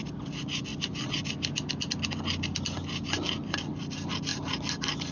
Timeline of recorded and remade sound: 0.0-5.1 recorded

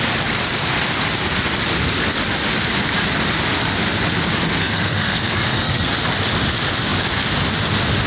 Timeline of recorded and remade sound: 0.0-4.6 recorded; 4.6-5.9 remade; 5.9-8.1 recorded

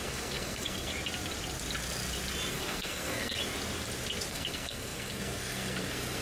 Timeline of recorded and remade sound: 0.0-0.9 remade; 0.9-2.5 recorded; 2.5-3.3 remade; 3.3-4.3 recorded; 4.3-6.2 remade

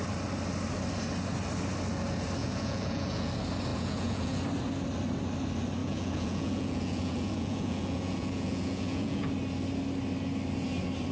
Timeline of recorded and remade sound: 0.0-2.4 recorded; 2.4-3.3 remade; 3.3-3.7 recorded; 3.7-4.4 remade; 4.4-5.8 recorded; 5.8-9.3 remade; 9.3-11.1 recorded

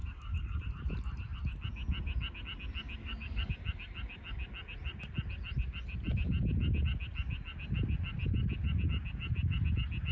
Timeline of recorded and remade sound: 0.0-0.6 remade; 0.6-3.0 recorded; 3.0-3.5 remade; 3.5-10.1 recorded

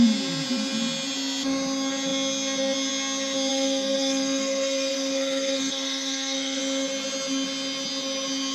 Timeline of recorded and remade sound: 0.0-3.5 recorded; 3.5-6.6 remade; 6.6-8.5 recorded

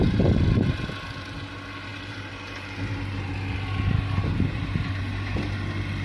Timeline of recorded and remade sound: 0.0-1.9 recorded; 1.9-3.3 remade; 3.3-4.2 recorded; 4.2-5.0 remade; 5.0-6.0 recorded

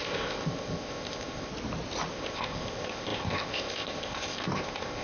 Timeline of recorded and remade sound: 0.0-1.5 remade; 1.5-2.1 recorded; 2.1-5.0 remade